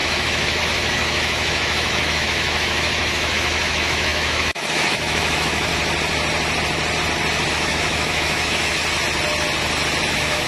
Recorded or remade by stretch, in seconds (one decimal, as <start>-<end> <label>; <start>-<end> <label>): 0.0-5.7 remade; 5.7-7.5 recorded; 7.5-8.8 remade; 8.8-10.1 recorded; 10.1-10.5 remade